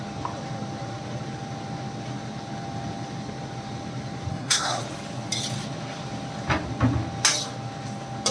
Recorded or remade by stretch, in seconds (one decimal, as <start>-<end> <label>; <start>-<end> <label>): 0.0-4.3 recorded; 4.3-4.8 remade; 4.8-8.3 recorded